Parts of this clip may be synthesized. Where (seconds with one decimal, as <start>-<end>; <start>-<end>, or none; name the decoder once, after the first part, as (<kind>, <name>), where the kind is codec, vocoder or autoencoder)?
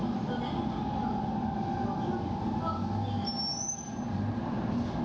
none